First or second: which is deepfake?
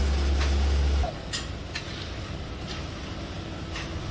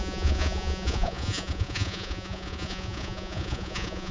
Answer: second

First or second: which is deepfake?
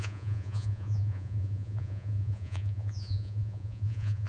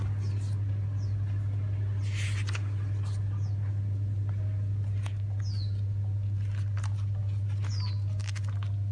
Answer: first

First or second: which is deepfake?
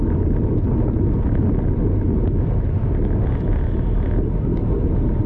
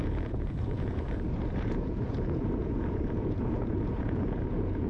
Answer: second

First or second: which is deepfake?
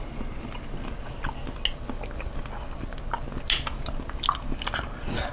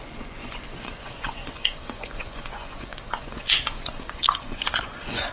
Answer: second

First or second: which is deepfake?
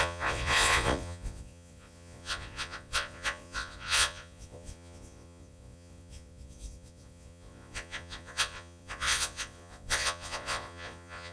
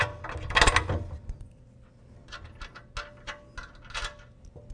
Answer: first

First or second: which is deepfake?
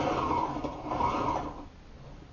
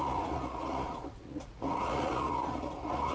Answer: second